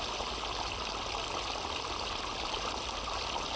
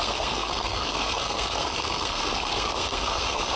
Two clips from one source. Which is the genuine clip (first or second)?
first